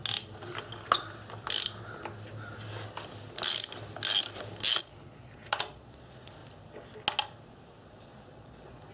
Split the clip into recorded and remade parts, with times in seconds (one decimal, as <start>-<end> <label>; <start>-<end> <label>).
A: 0.0-4.8 recorded; 4.8-6.4 remade; 6.4-7.9 recorded; 7.9-8.9 remade